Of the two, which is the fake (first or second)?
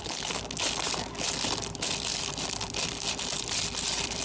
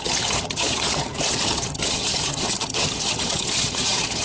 second